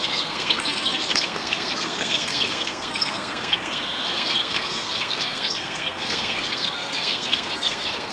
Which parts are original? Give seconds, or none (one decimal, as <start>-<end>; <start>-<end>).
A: none